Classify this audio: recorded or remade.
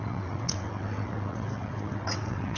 remade